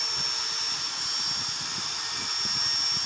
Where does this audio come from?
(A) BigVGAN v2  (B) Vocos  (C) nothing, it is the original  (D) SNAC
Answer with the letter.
C